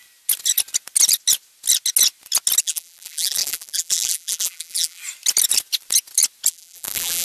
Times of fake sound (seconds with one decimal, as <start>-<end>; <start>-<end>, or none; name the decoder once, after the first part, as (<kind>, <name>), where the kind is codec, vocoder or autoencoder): 2.6-5.0 (vocoder, BigVGAN v2); 6.5-7.2

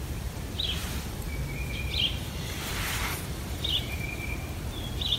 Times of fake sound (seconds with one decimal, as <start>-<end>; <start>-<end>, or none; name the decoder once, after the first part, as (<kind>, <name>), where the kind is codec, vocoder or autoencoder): 2.7-4.0 (vocoder, BigVGAN v2)

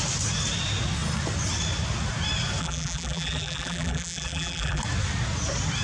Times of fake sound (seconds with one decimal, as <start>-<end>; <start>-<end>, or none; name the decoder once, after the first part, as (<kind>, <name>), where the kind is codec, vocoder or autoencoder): 2.6-4.8 (vocoder, BigVGAN v2)

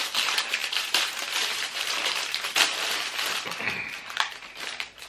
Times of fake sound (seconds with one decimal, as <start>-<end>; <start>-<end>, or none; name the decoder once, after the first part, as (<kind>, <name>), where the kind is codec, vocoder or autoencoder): 0.0-5.1 (vocoder, BigVGAN v2)

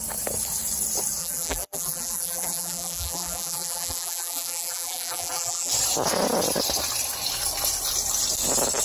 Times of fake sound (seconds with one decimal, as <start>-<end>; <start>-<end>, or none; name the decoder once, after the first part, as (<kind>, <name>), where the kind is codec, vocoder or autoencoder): 1.2-5.7 (vocoder, BigVGAN v2)